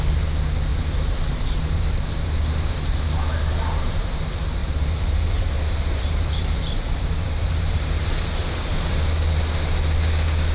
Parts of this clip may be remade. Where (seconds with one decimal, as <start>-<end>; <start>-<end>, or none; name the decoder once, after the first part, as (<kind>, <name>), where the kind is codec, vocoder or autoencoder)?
0.7-2.4 (vocoder, BigVGAN v2); 4.6-9.0